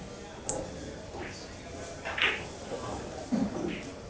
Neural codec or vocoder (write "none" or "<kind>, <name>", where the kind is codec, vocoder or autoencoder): none